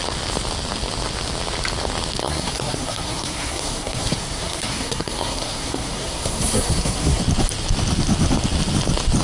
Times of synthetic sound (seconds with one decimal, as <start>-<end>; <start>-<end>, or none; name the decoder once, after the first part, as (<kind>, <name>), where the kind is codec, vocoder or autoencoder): 2.2-7.2 (codec, SNAC)